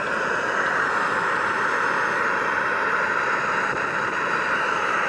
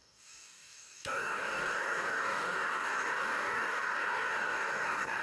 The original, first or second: first